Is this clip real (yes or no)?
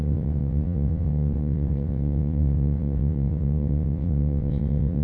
no